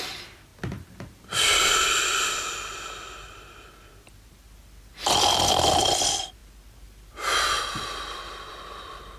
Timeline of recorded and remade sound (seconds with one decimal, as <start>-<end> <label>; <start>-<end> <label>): 0.0-9.2 recorded